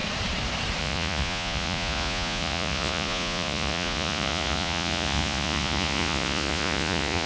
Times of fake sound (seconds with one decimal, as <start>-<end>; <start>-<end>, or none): 0.8-7.3